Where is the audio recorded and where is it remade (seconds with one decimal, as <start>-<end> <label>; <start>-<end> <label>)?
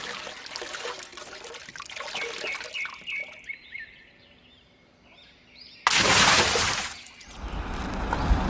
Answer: 0.0-8.5 recorded